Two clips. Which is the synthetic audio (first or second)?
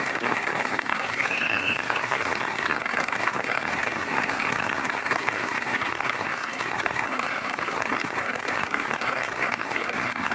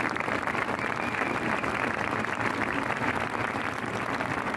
first